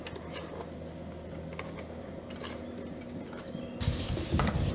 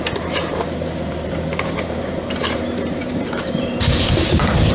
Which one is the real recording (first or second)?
first